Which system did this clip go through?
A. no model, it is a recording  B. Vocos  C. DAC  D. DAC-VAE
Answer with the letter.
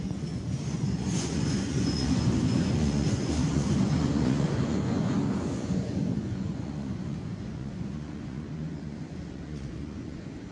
B